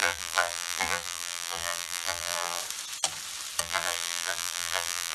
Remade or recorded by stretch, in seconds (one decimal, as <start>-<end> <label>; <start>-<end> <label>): 0.0-2.6 remade; 2.6-3.6 recorded; 3.6-5.1 remade

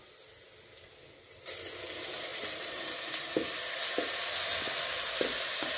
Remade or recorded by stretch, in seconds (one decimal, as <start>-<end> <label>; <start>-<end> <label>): 0.0-2.3 recorded; 2.3-2.8 remade; 2.8-5.8 recorded

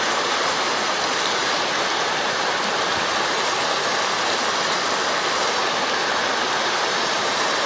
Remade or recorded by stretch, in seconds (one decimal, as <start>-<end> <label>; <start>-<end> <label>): 0.0-3.9 remade; 3.9-6.6 recorded; 6.6-7.7 remade

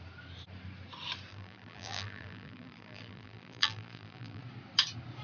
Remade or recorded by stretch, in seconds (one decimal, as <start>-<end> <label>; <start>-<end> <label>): 0.0-1.3 recorded; 1.3-4.4 remade; 4.4-5.2 recorded